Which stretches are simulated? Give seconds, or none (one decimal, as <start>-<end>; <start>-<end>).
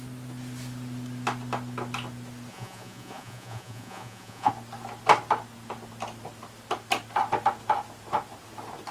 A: 2.5-4.5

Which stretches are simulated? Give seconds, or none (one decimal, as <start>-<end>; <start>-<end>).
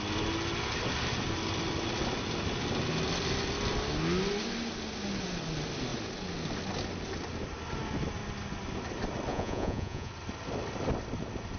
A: 9.3-10.1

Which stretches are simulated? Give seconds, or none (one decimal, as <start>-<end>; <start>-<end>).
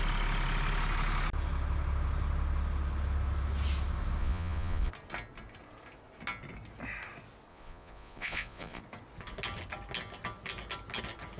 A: 4.2-4.9; 7.5-8.8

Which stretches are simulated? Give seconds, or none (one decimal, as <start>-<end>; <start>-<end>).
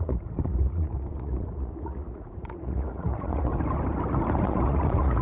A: 0.0-3.5; 4.4-5.2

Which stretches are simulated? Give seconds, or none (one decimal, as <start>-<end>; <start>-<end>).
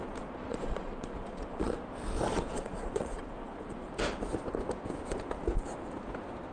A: 0.5-1.8; 2.3-3.9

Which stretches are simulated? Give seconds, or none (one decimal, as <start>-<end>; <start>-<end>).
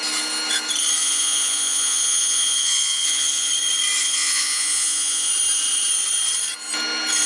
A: 1.0-3.5; 4.0-5.3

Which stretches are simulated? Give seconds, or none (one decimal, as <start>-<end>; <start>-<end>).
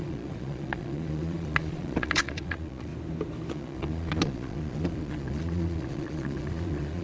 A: 0.0-2.9; 3.5-7.0